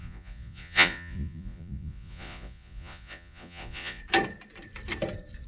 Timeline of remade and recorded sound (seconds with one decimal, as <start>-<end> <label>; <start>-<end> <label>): 0.0-4.0 remade; 4.0-5.5 recorded